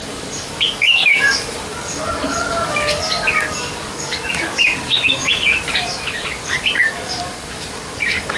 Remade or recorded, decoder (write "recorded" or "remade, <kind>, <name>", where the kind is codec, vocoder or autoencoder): remade, codec, DAC